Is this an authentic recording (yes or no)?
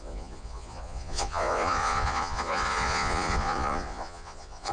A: no